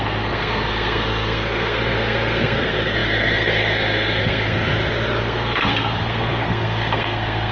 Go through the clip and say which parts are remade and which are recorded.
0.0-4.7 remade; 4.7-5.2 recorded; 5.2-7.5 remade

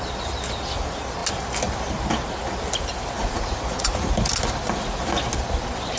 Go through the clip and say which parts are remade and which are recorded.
0.0-3.2 recorded; 3.2-3.9 remade; 3.9-6.0 recorded

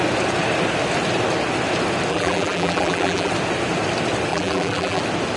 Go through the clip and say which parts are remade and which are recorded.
0.0-2.1 recorded; 2.1-3.3 remade; 3.3-4.3 recorded; 4.3-5.0 remade; 5.0-5.4 recorded

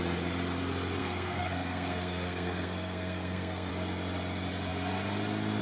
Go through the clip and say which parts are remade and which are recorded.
0.0-1.0 recorded; 1.0-3.7 remade; 3.7-5.6 recorded